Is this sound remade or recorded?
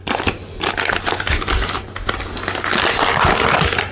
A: recorded